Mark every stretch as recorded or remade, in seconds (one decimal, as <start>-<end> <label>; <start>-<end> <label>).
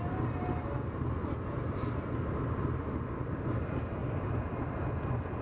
0.0-5.4 recorded